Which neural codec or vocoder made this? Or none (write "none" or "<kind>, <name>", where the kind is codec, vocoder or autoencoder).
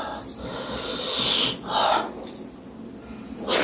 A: none